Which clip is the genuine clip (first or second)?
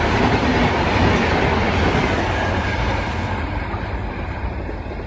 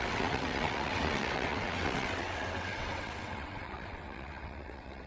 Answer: first